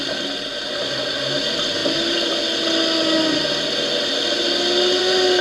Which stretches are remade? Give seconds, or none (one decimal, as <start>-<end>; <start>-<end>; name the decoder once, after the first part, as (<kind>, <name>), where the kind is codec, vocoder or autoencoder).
none

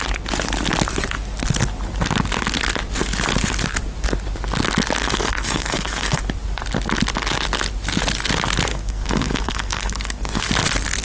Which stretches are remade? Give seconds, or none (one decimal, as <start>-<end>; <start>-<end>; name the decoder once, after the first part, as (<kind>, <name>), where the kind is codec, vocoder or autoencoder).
5.0-6.2 (codec, SNAC); 8.7-10.4

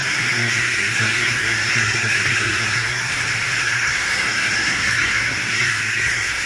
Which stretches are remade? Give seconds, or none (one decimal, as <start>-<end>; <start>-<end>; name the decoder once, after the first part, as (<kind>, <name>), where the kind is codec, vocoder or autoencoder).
0.0-3.1 (codec, SNAC); 3.6-6.5

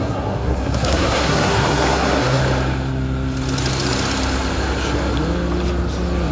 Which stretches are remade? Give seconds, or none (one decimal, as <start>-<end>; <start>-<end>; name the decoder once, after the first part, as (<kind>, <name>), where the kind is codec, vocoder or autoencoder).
0.0-2.4 (codec, SNAC)